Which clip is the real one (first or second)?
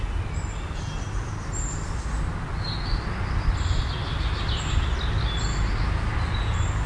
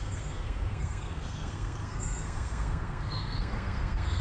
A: first